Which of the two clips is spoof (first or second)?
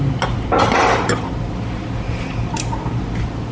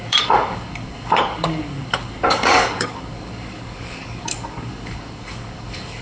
second